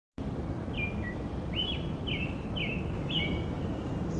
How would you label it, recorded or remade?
recorded